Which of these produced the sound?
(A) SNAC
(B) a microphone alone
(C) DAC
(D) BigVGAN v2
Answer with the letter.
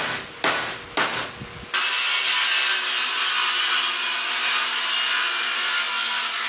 B